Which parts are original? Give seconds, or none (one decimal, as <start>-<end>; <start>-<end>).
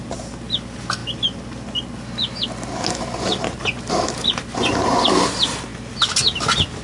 1.0-3.4; 5.7-6.8